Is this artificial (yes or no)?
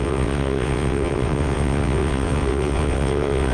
yes